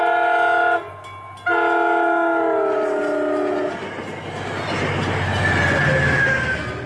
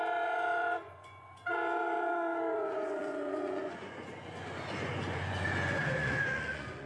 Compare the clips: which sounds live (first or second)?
first